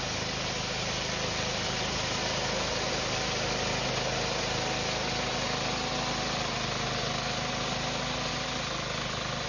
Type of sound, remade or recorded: recorded